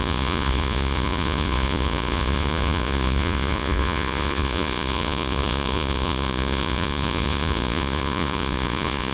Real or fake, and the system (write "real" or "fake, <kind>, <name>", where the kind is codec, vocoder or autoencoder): fake, vocoder, Vocos